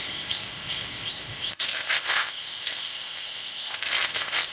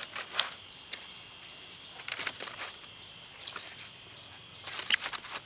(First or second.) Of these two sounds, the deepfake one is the first